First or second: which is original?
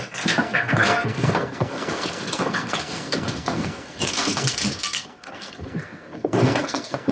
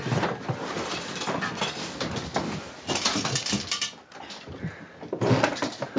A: second